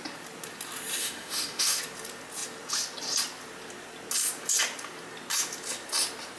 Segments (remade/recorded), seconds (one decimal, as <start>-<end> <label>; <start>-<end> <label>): 0.0-1.0 recorded; 1.0-1.8 remade; 1.8-6.4 recorded